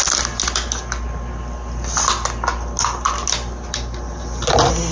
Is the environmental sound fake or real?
real